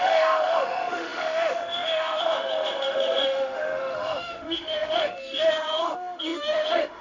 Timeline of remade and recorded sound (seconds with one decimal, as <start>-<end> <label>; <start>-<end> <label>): 0.0-7.0 remade